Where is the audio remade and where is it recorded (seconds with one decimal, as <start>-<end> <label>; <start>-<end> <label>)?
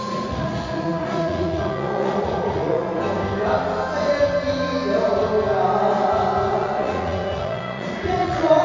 0.0-2.9 remade; 2.9-6.5 recorded; 6.5-8.6 remade